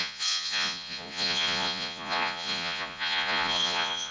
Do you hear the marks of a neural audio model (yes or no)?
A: yes